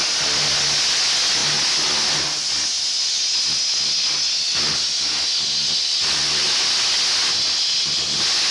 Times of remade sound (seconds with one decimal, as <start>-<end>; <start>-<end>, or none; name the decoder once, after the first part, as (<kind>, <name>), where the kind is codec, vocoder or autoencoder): none